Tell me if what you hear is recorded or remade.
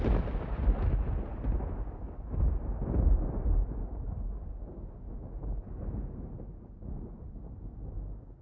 recorded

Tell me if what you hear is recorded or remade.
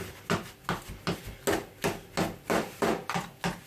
recorded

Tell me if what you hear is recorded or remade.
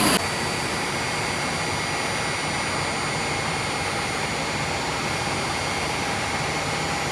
recorded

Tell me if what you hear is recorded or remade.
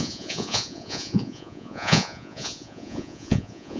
remade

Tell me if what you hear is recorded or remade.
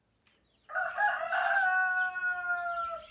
recorded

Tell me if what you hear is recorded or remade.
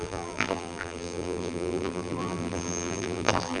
remade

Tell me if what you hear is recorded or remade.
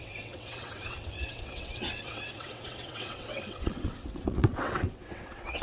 remade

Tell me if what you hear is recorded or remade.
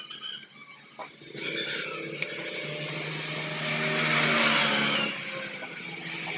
recorded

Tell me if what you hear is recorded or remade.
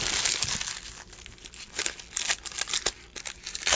recorded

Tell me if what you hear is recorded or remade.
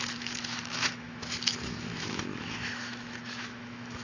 remade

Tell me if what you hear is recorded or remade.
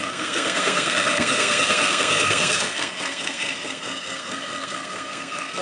remade